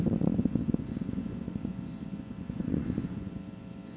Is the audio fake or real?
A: fake